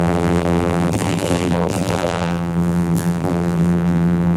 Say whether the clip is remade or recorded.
remade